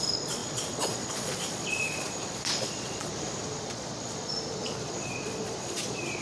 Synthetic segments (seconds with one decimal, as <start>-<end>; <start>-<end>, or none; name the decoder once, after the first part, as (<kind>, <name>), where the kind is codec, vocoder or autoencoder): 0.0-3.1 (vocoder, Vocos); 3.6-6.2